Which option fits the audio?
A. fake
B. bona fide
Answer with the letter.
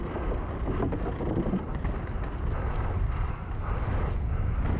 B